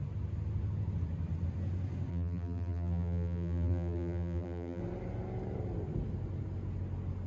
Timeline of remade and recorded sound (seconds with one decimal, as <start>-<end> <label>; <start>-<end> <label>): 0.0-2.1 recorded; 2.1-4.8 remade; 4.8-7.3 recorded